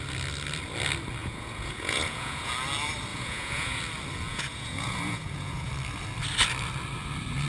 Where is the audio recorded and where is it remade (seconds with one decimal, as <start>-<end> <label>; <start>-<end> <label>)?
0.0-1.2 recorded; 1.2-2.5 remade; 2.5-3.1 recorded; 3.1-3.8 remade; 3.8-4.3 recorded; 4.3-5.7 remade; 5.7-7.5 recorded